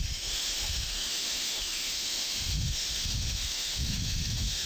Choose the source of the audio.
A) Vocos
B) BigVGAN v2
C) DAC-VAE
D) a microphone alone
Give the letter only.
C